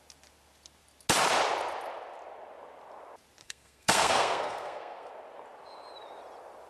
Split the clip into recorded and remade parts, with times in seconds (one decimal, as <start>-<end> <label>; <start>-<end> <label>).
0.0-3.4 recorded; 3.4-5.1 remade; 5.1-6.7 recorded